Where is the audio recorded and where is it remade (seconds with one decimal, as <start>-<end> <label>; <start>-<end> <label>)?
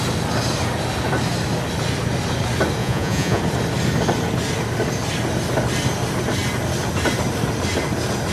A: 0.0-2.8 recorded; 2.8-3.4 remade; 3.4-8.3 recorded